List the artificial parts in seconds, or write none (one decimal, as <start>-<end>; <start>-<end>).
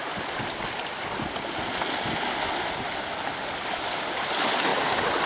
4.7-5.3